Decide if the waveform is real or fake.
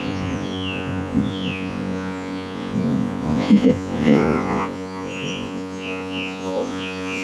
fake